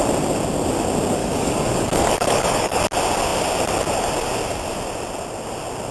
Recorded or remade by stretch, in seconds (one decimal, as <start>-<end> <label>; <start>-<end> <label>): 0.0-1.2 recorded; 1.2-2.8 remade; 2.8-5.9 recorded